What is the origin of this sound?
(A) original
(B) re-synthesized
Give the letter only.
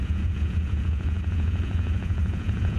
B